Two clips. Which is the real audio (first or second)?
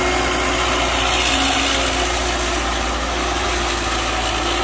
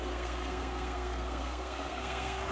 first